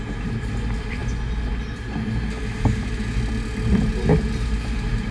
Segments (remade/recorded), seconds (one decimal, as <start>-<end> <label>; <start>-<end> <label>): 0.0-5.1 recorded